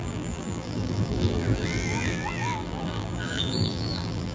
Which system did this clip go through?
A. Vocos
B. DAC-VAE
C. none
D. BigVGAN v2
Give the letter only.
D